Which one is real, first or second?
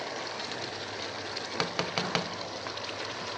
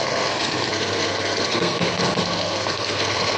first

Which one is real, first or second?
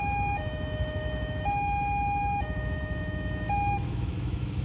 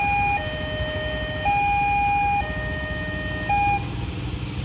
second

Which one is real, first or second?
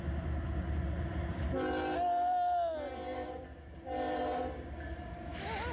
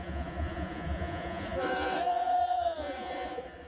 first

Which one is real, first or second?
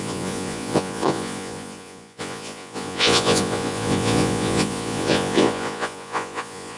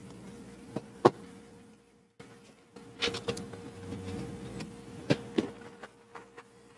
second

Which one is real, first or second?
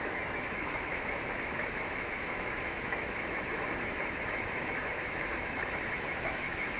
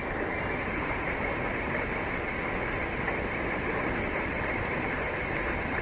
second